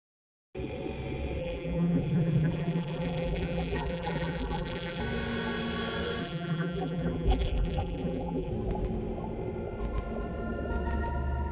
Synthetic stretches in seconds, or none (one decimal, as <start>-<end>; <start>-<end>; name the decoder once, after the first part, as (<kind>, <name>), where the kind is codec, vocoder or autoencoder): 1.4-5.0 (vocoder, BigVGAN v2); 6.2-8.5